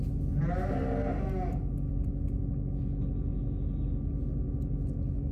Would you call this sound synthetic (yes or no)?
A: no